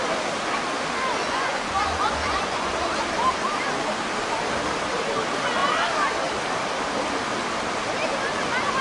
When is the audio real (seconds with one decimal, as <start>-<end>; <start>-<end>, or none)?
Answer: 0.0-1.2; 2.7-8.8